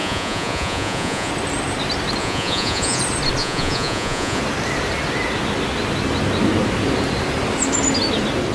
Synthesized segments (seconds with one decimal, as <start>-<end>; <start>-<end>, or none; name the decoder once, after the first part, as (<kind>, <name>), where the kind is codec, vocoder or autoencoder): 0.0-1.3 (vocoder, Vocos); 2.2-3.0; 3.4-4.4